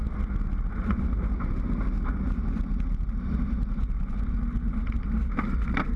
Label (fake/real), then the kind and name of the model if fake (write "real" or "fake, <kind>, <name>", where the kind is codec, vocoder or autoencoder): real